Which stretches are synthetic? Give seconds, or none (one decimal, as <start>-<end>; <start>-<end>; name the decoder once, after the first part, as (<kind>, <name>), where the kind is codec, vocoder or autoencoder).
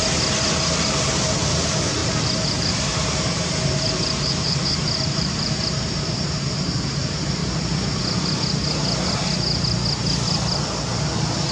2.0-6.6 (vocoder, BigVGAN v2)